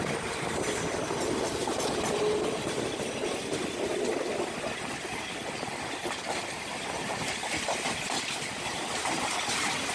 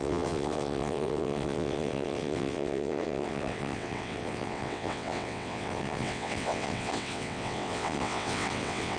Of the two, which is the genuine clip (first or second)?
first